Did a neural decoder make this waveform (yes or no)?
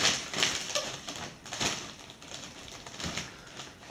no